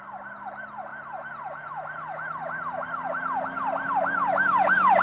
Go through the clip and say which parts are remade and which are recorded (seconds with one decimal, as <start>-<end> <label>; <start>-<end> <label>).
0.0-5.0 recorded